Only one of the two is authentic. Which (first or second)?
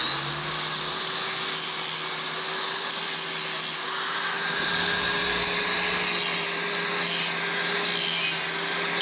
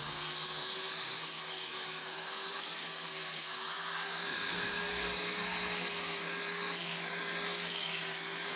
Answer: first